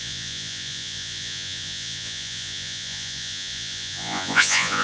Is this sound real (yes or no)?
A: no